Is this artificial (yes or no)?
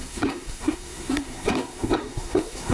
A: yes